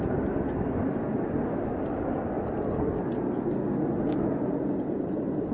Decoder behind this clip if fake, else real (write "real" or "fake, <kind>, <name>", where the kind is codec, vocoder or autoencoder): real